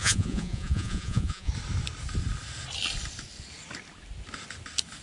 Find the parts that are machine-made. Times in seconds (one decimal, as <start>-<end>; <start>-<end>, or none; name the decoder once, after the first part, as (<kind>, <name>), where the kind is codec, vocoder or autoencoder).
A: 0.0-1.5 (vocoder, Vocos)